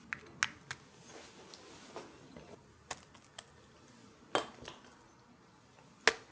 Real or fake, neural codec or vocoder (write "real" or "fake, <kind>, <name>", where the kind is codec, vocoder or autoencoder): real